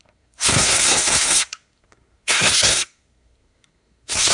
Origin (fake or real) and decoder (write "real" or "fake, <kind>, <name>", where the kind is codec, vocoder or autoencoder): fake, codec, SNAC